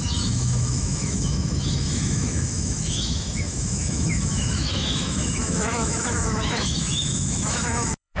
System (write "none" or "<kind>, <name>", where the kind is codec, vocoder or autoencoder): autoencoder, DAC-VAE